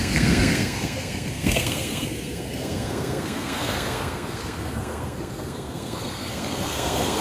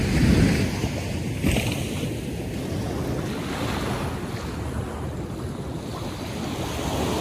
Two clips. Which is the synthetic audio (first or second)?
first